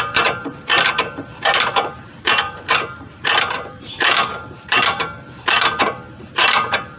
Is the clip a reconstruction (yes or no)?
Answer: yes